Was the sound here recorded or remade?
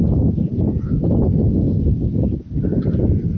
recorded